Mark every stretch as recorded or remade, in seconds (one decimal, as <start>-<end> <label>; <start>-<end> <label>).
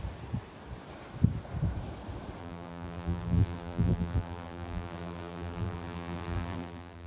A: 0.0-2.4 recorded; 2.4-7.1 remade